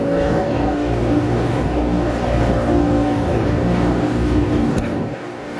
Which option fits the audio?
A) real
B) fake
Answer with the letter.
B